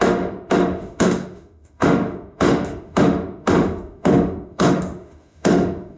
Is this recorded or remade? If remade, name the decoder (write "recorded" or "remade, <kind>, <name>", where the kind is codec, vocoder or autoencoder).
remade, autoencoder, DAC-VAE